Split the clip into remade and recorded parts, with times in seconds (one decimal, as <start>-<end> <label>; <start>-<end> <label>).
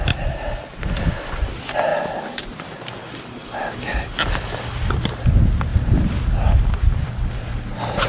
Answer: 0.0-1.9 recorded; 1.9-2.8 remade; 2.8-3.4 recorded; 3.4-5.2 remade; 5.2-8.1 recorded